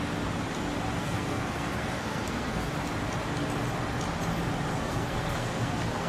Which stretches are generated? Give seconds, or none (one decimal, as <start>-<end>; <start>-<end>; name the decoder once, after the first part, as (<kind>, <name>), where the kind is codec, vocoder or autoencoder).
1.0-2.7 (codec, SNAC); 4.7-6.1

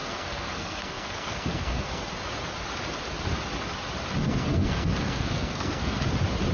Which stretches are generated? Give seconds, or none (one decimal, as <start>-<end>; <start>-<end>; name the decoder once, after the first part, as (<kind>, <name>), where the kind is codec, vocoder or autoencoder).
0.0-2.1 (codec, SNAC); 4.2-6.0

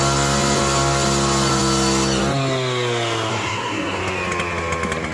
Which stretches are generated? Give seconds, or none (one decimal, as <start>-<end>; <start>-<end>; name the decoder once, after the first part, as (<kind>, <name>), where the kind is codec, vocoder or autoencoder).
3.3-4.0 (codec, SNAC)

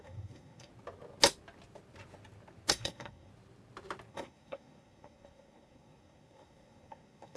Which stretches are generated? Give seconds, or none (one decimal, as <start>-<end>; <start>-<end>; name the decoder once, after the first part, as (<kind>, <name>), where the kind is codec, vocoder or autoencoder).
0.0-0.7 (codec, SNAC); 2.7-3.3; 4.1-7.4

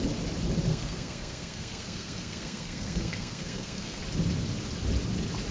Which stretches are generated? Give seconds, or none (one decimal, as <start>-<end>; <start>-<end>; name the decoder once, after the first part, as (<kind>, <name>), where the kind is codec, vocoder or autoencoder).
0.7-4.0 (codec, SNAC)